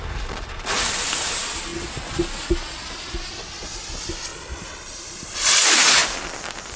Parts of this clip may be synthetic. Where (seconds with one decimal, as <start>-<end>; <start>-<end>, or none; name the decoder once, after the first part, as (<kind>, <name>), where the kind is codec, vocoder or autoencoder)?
0.0-1.7 (vocoder, BigVGAN v2); 3.3-6.8